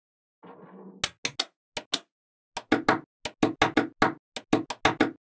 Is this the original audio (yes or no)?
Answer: yes